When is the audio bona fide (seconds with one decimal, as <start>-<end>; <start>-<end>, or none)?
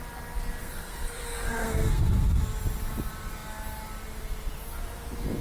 0.0-0.6; 2.4-5.4